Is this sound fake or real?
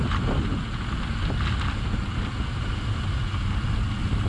real